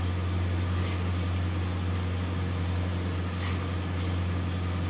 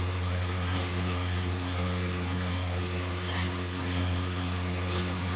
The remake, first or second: second